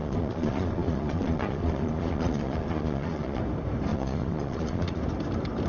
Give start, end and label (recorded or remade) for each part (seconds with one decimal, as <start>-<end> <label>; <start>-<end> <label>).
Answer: 0.0-3.4 remade; 3.4-3.9 recorded; 3.9-5.0 remade; 5.0-5.7 recorded